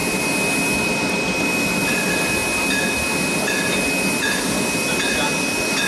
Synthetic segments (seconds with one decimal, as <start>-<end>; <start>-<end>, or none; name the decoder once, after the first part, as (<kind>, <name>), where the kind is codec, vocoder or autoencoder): none